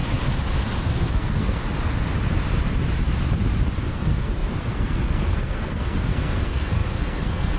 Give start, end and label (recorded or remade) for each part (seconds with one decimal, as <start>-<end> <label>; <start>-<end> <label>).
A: 0.0-0.9 recorded; 0.9-1.6 remade; 1.6-3.9 recorded; 3.9-7.6 remade